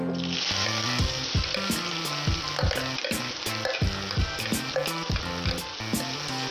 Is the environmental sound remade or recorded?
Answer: recorded